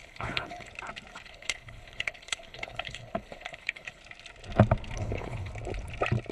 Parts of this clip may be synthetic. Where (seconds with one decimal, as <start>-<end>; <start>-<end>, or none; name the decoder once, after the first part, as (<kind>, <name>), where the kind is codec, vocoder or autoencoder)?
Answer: 0.0-0.7 (codec, HILCodec); 1.1-4.0; 5.0-5.5